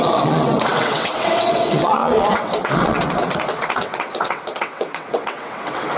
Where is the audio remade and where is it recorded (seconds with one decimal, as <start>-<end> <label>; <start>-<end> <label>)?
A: 0.0-6.0 remade